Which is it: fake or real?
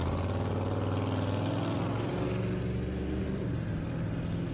real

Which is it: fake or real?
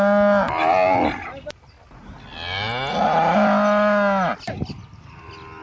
real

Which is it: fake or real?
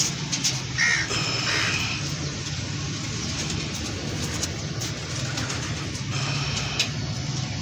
real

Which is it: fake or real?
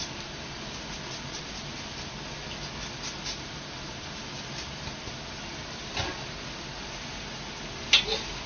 real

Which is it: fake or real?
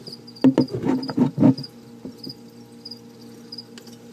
real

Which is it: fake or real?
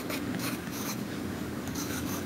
fake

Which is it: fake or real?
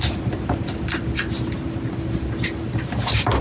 real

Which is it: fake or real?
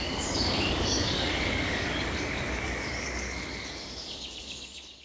fake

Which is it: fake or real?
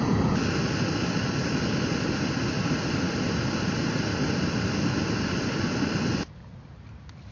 real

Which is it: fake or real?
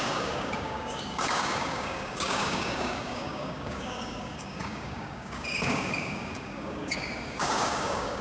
fake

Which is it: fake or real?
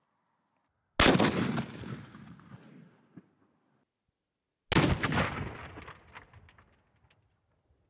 real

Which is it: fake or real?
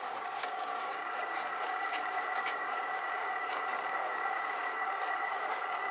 fake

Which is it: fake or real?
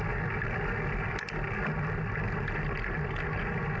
real